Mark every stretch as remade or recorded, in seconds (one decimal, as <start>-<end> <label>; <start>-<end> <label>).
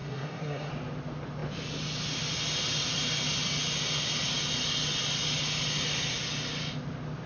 0.0-0.7 remade; 0.7-7.3 recorded